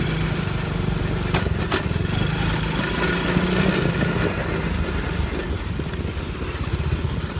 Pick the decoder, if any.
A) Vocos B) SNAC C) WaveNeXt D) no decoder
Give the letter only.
D